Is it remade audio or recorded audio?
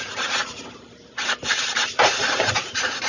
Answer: remade